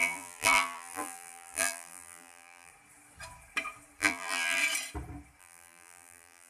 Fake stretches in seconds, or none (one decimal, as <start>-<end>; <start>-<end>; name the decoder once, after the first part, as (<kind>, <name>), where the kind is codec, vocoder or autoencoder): 0.0-2.7 (vocoder, BigVGAN v2); 4.0-4.6; 5.4-6.5